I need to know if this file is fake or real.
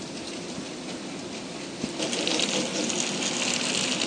real